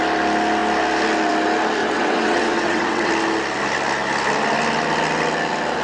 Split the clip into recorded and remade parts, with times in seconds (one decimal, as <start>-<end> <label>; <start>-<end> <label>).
0.0-1.8 recorded; 1.8-3.1 remade; 3.1-5.8 recorded